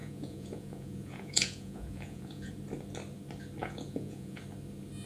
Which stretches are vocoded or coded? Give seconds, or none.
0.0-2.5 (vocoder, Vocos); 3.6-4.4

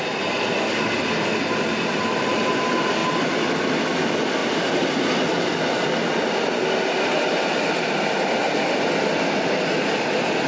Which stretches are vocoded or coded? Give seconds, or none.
none

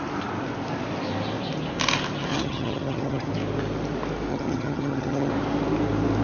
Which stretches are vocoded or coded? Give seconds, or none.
2.3-3.3 (vocoder, HiFi-GAN); 4.3-5.3

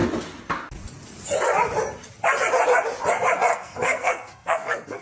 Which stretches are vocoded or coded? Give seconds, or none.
3.5-5.0 (codec, SNAC)

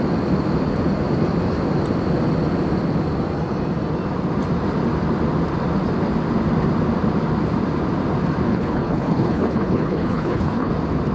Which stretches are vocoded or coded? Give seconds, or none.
8.5-10.7 (codec, HILCodec)

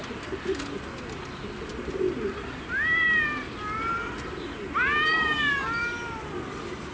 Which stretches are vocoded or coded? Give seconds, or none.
none